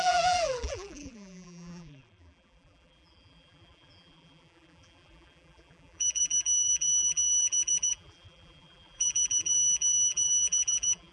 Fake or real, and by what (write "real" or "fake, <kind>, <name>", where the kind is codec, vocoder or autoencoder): fake, vocoder, BigVGAN v2